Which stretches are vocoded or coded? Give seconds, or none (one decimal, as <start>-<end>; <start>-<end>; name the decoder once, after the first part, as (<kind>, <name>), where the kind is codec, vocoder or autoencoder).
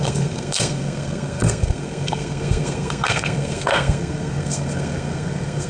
0.0-5.7 (codec, SNAC)